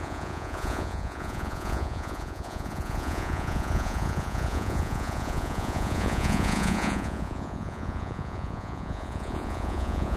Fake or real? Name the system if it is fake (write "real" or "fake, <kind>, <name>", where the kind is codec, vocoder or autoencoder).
fake, vocoder, Vocos